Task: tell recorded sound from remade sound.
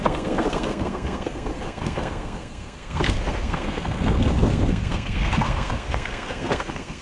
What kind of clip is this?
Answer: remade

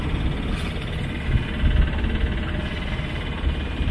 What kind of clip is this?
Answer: recorded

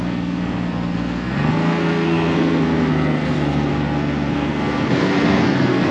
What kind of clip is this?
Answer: remade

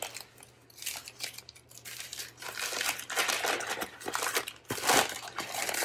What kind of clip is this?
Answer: recorded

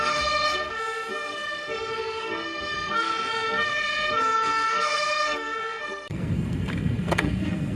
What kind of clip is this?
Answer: remade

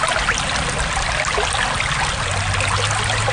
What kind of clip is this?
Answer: recorded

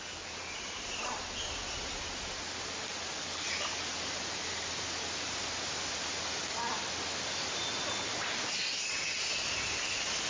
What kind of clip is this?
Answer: recorded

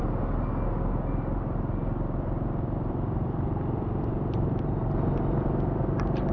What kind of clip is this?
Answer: recorded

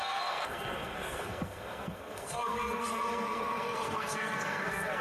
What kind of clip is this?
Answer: remade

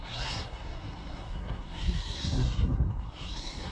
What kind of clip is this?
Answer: remade